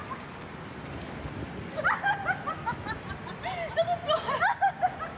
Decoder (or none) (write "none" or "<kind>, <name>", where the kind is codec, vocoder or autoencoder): vocoder, BigVGAN v2